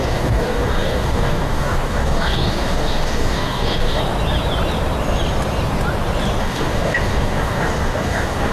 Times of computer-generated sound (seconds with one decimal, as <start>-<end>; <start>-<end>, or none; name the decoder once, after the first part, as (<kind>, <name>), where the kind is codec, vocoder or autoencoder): 0.0-4.0 (codec, DAC); 6.4-8.5